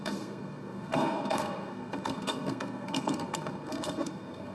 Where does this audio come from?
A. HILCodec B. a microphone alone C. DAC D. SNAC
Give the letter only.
D